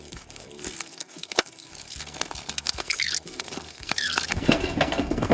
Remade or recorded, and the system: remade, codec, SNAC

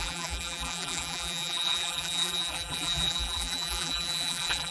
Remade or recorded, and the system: remade, vocoder, BigVGAN v2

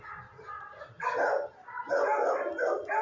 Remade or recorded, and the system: recorded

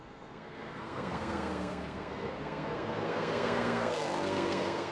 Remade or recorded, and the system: remade, codec, SNAC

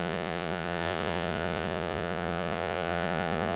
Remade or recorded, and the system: remade, vocoder, Vocos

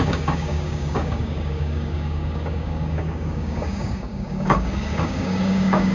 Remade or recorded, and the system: remade, codec, DAC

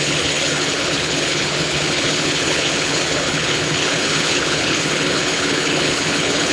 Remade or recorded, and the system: remade, codec, HILCodec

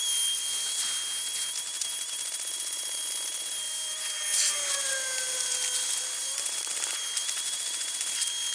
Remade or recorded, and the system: recorded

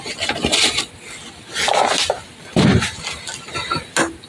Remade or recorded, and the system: recorded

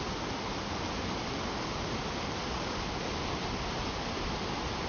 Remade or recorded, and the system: recorded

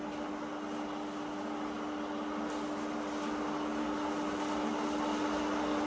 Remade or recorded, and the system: recorded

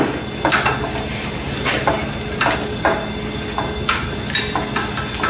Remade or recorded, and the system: recorded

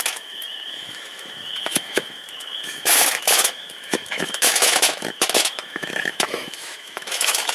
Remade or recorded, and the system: remade, autoencoder, DAC-VAE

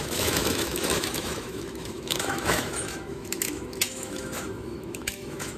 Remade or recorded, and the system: remade, autoencoder, DAC-VAE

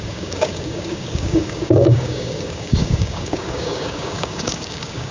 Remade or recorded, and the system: remade, codec, DAC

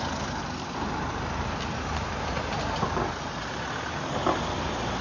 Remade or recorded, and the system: recorded